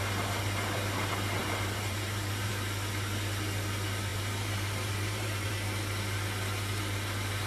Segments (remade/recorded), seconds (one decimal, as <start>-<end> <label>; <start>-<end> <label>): 0.0-1.4 recorded; 1.4-2.5 remade; 2.5-4.1 recorded; 4.1-5.5 remade; 5.5-7.5 recorded